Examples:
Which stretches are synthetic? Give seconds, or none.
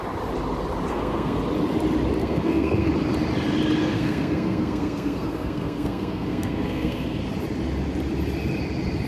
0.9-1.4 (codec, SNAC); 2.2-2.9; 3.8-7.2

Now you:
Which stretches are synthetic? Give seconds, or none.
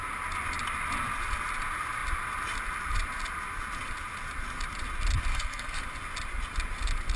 5.3-5.8 (codec, SNAC)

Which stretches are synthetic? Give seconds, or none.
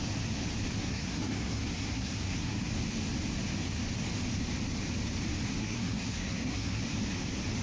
0.8-2.7 (codec, SNAC); 5.6-6.8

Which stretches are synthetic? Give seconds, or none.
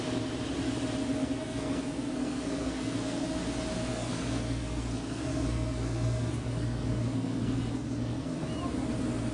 1.2-3.4 (codec, SNAC); 3.9-8.4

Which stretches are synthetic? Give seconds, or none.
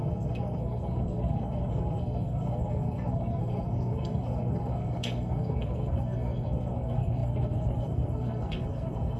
0.0-9.2 (codec, SNAC)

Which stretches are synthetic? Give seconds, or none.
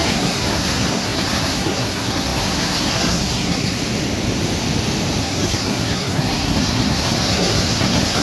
0.0-3.8 (codec, SNAC); 5.2-8.2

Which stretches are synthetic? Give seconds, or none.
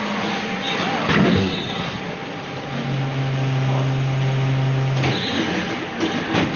1.4-2.0 (codec, SNAC)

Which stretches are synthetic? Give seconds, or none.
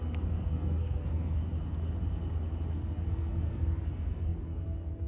0.0-1.4 (codec, SNAC); 2.7-5.1